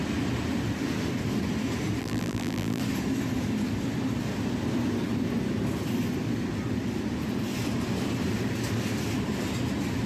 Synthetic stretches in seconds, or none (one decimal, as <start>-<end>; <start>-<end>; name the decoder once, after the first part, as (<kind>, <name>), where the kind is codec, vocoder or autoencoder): 2.0-2.8 (vocoder, BigVGAN v2)